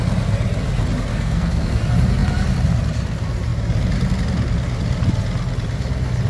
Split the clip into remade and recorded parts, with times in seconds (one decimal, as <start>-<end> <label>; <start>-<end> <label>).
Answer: 0.0-1.1 recorded; 1.1-1.8 remade; 1.8-6.3 recorded